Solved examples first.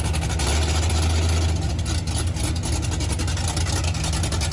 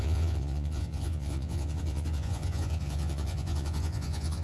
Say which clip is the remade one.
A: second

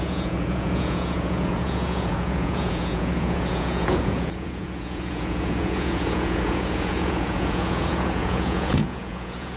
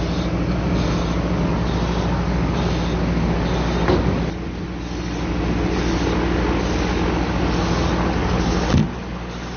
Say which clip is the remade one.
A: first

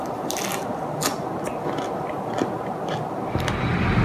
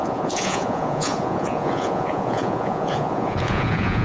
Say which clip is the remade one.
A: second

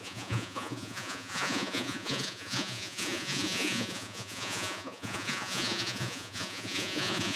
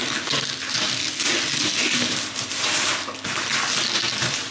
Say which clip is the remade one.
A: first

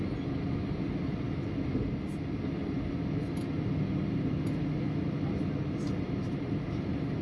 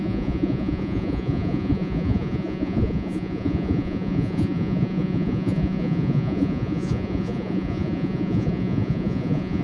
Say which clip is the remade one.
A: second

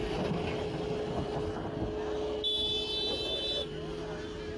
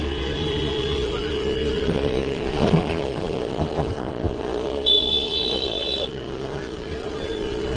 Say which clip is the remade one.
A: second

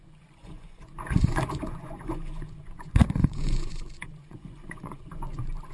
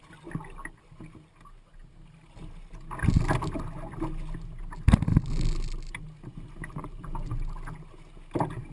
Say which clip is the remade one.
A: first